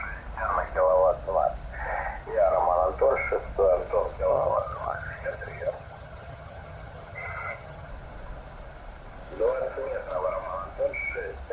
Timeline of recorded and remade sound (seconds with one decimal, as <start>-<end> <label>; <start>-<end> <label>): 0.0-4.3 recorded; 4.3-7.9 remade; 7.9-11.5 recorded